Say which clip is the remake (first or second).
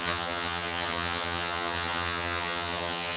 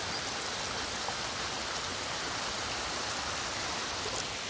first